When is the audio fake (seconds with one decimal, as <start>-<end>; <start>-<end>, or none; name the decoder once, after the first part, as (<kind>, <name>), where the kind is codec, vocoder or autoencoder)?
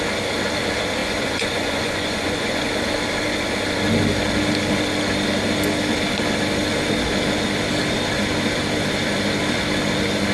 1.0-2.7 (vocoder, Vocos)